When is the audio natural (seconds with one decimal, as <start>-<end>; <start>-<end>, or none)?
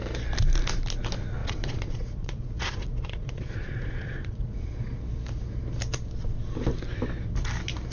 0.0-1.4; 5.0-7.9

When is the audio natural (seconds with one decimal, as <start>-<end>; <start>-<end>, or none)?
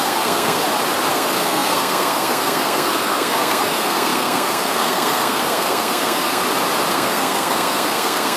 0.6-1.1; 6.4-6.9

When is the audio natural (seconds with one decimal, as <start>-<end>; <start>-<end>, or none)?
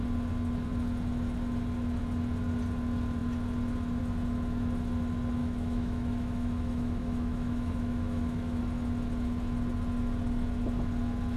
0.0-5.4; 8.6-11.4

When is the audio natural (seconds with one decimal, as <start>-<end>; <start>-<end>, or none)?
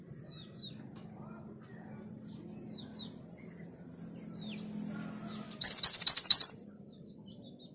0.0-2.9; 7.2-7.7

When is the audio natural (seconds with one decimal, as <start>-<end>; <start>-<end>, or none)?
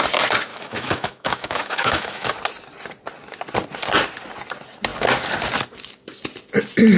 0.0-0.5; 2.3-7.0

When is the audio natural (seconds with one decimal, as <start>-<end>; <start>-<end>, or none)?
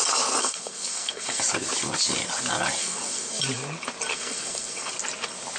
0.0-0.4; 1.4-2.8; 3.4-4.1; 4.9-5.6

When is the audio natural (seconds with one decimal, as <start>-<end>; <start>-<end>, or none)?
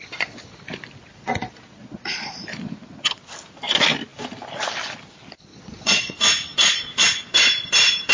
0.0-1.1; 2.3-5.5; 6.1-8.1